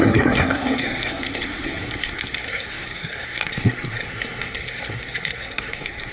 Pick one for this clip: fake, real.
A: fake